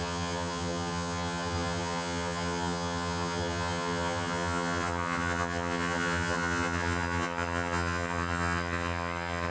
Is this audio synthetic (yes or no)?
yes